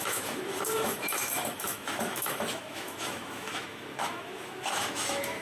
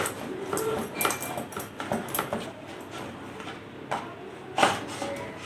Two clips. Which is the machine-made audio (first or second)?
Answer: first